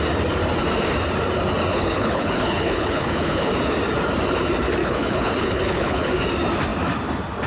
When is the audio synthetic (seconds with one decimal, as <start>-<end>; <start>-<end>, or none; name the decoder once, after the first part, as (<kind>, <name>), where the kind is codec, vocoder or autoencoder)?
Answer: 1.7-3.5 (codec, HILCodec); 4.8-6.1